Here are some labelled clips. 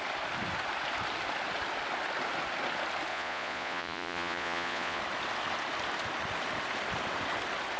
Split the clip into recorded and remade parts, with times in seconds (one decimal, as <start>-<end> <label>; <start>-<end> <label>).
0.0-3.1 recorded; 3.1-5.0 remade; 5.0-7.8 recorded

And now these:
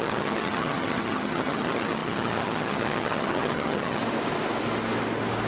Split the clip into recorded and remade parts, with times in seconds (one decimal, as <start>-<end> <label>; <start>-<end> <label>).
0.0-4.0 remade; 4.0-5.5 recorded

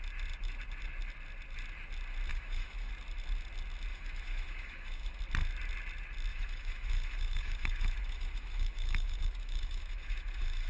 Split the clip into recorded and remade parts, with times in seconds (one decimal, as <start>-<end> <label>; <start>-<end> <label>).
0.0-2.3 recorded; 2.3-2.9 remade; 2.9-3.9 recorded; 3.9-5.2 remade; 5.2-6.3 recorded; 6.3-10.7 remade

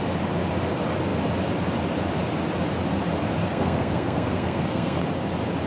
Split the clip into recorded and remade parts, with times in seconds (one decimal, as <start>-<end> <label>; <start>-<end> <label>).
0.0-3.4 recorded; 3.4-5.0 remade; 5.0-5.7 recorded

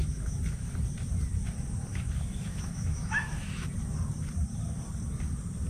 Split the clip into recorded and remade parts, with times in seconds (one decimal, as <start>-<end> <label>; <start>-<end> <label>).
0.0-0.7 remade; 0.7-1.9 recorded; 1.9-3.7 remade; 3.7-5.7 recorded

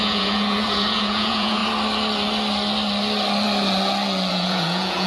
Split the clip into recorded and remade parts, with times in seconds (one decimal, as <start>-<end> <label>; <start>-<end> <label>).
0.0-1.6 remade; 1.6-4.3 recorded; 4.3-5.1 remade

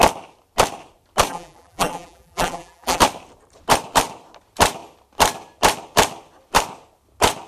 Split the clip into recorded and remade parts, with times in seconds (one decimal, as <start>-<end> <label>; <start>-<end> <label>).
0.0-1.3 recorded; 1.3-3.0 remade; 3.0-7.5 recorded